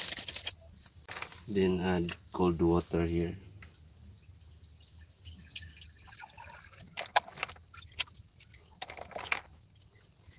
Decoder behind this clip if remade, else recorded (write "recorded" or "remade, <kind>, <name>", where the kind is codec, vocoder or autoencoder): recorded